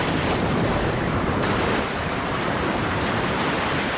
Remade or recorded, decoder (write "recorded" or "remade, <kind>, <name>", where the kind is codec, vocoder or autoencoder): remade, vocoder, BigVGAN v2